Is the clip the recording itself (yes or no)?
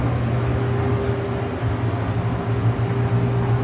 yes